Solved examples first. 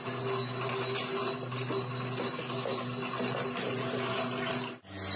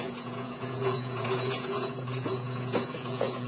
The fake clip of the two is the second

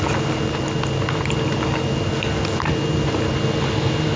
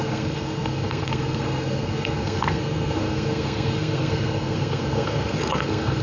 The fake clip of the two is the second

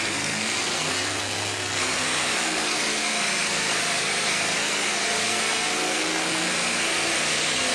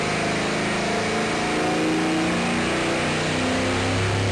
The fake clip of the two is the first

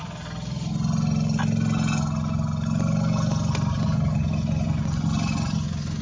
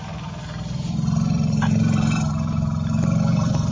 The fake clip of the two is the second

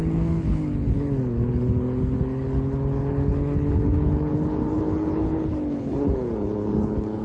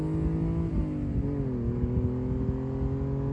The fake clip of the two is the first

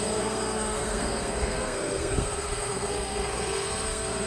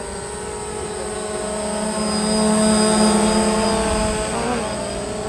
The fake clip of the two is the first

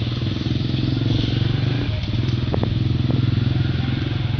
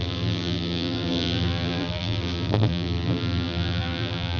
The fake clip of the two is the second